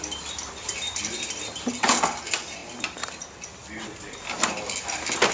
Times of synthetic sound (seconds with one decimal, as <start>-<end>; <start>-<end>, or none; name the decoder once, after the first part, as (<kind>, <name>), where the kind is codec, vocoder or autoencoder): none